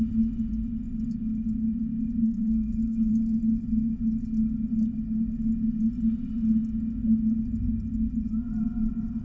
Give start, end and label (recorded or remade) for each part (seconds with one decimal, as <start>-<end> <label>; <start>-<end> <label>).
0.0-2.2 recorded; 2.2-3.1 remade; 3.1-9.2 recorded

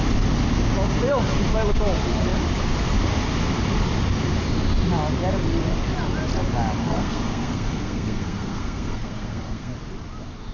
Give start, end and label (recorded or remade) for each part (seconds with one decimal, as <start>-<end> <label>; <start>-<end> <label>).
0.0-6.8 recorded; 6.8-9.7 remade; 9.7-10.5 recorded

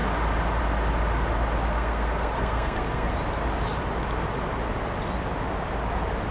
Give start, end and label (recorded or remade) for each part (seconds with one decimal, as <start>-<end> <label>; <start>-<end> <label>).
0.0-1.7 recorded; 1.7-3.1 remade; 3.1-6.3 recorded

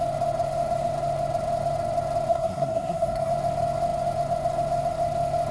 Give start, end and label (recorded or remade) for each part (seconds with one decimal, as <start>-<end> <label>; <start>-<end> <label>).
0.0-2.3 recorded; 2.3-3.3 remade; 3.3-5.5 recorded

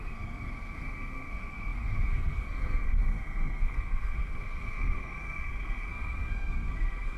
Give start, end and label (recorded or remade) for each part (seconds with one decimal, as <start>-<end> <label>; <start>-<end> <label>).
0.0-7.2 remade

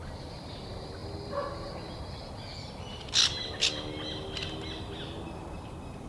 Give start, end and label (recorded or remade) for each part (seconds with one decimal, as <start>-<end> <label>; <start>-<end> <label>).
0.0-6.1 recorded